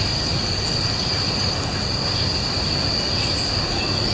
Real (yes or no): yes